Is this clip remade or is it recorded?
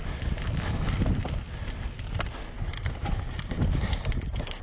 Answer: recorded